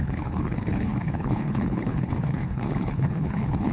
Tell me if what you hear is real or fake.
fake